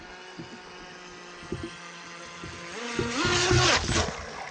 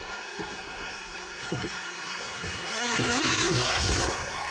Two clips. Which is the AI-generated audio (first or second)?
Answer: second